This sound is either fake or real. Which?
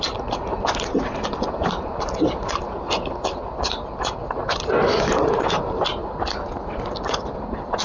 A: real